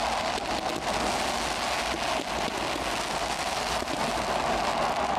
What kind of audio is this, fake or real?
real